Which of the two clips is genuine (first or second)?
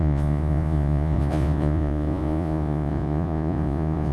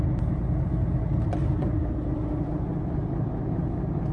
second